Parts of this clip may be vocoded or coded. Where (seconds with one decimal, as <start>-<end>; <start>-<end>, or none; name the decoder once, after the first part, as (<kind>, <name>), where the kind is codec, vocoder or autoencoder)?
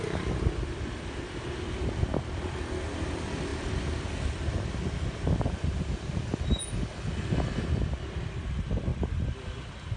none